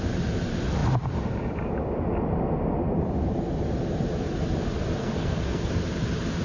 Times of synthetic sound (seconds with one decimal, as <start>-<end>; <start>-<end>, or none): 5.0-5.7